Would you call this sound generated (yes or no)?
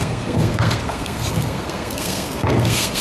yes